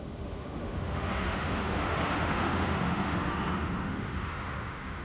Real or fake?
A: fake